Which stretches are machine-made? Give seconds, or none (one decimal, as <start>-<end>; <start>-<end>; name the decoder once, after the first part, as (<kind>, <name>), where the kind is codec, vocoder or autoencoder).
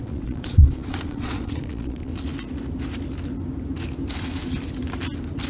0.0-2.1 (vocoder, Vocos)